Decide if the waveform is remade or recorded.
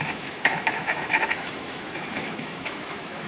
remade